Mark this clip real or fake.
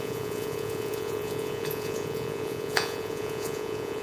fake